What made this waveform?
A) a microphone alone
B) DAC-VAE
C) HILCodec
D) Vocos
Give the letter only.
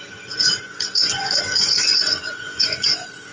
D